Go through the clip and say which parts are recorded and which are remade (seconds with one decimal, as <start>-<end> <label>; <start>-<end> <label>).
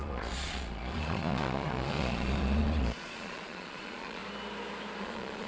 0.0-4.2 remade; 4.2-5.0 recorded; 5.0-5.5 remade